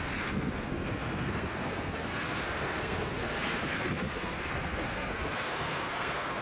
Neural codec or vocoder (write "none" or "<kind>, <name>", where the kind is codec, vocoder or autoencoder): codec, SNAC